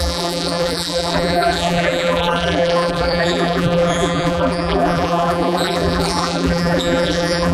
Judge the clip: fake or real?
fake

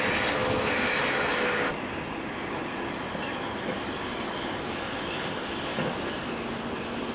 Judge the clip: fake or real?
real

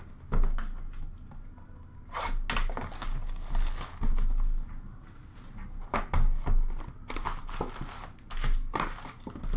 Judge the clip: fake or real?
real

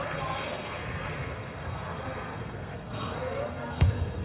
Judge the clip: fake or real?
fake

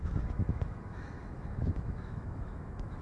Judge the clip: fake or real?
fake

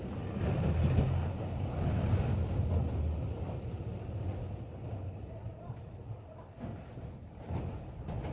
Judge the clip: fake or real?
real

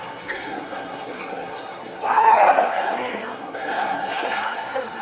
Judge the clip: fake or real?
fake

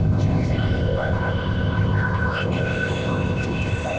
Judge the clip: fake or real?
fake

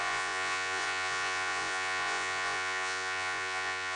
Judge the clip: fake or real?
fake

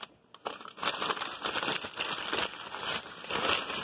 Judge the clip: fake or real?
real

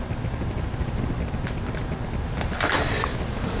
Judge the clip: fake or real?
real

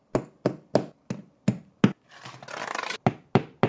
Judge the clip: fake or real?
real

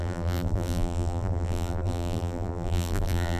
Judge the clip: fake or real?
fake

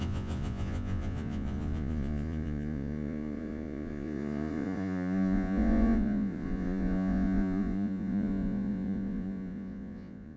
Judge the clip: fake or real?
fake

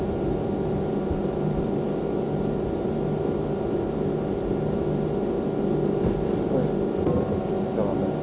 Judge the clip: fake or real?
real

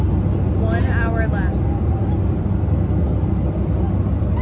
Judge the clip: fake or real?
real